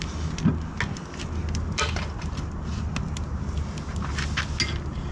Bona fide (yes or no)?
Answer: yes